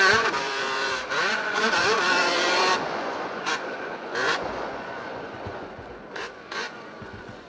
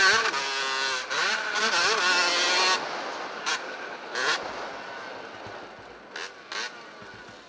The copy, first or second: first